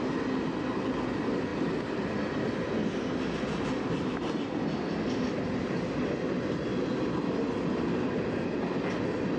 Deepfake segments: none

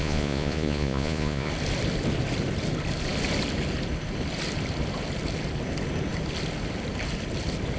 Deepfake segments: 0.0-1.5 (vocoder, Vocos)

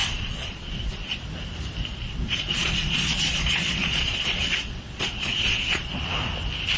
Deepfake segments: 0.0-1.2 (vocoder, Vocos); 1.9-6.0

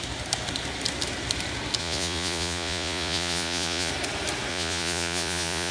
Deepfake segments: 1.8-3.9 (vocoder, Vocos); 4.5-5.7